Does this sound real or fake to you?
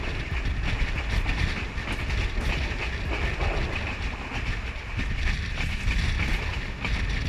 real